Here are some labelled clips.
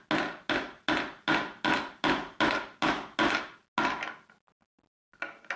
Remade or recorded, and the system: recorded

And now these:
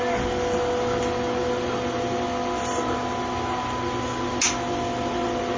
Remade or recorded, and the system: recorded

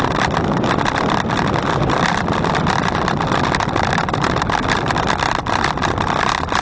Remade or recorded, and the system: recorded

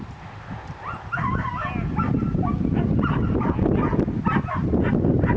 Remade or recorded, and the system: recorded